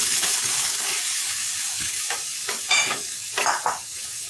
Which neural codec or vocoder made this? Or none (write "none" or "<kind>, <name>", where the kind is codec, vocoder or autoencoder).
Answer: codec, DAC